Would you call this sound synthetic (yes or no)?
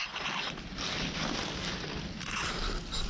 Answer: no